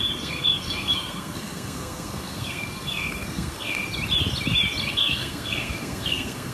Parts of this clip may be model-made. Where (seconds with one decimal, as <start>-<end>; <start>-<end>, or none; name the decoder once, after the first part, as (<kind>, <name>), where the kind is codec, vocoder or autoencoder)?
0.0-3.8 (codec, SNAC); 4.8-6.5